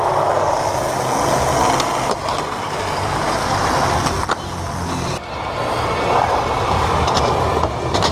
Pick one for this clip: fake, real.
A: real